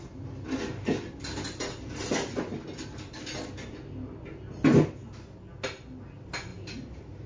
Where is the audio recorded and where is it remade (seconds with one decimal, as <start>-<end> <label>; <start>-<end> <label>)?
0.0-7.3 recorded